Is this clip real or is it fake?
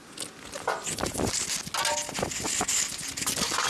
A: real